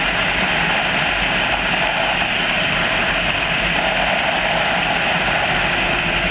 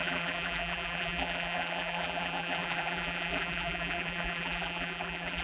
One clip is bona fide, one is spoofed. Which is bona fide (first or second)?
first